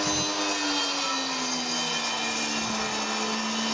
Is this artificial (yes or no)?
no